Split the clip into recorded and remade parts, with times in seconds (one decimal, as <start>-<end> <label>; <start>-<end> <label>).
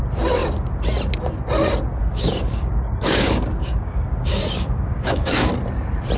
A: 0.0-2.0 recorded; 2.0-5.5 remade; 5.5-6.2 recorded